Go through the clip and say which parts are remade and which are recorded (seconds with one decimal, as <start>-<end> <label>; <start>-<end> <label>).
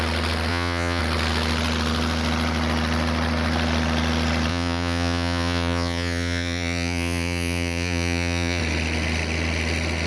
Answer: 0.0-0.5 recorded; 0.5-1.0 remade; 1.0-4.5 recorded; 4.5-8.6 remade; 8.6-10.1 recorded